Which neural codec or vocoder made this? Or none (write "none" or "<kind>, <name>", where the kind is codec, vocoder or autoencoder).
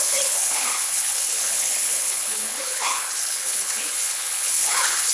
codec, HILCodec